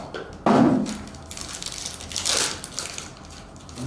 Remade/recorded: recorded